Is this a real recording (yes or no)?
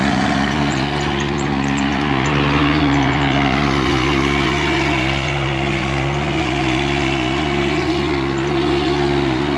no